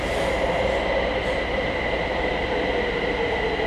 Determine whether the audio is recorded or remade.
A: recorded